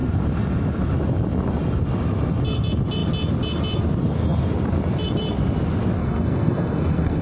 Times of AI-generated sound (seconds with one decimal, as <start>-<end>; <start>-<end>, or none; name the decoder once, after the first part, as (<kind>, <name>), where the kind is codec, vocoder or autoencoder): 6.0-7.2 (codec, SNAC)